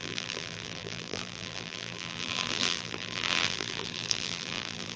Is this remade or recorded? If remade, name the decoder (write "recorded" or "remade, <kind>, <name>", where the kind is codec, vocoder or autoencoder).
remade, vocoder, BigVGAN v2